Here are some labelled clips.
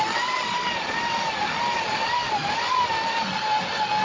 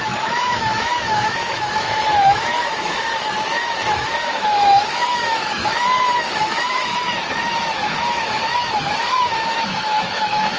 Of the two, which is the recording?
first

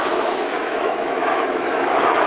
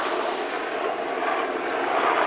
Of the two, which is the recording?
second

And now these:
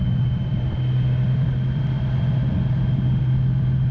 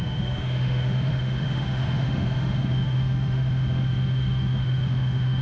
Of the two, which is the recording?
first